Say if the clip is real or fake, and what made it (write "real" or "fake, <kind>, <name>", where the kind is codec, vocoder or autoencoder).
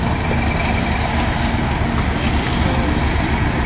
real